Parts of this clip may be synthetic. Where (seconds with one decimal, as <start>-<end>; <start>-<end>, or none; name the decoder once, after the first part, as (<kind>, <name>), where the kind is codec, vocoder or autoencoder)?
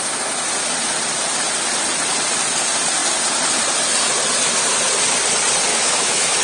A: 5.7-6.4 (autoencoder, DAC-VAE)